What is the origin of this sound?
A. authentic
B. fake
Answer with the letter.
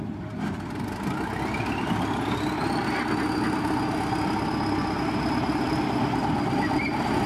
A